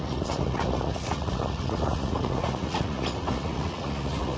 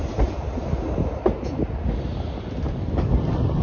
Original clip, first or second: second